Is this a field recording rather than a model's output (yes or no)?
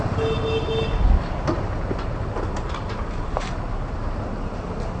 yes